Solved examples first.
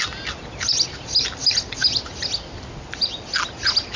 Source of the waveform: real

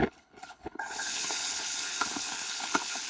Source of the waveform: fake